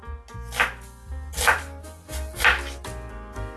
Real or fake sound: real